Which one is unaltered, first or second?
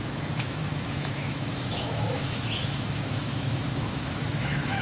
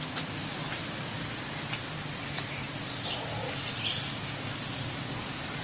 second